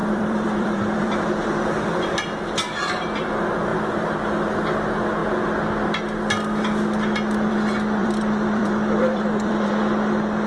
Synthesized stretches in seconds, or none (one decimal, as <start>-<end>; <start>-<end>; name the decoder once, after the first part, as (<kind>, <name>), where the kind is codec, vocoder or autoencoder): 0.0-1.3 (vocoder, BigVGAN v2); 8.0-9.7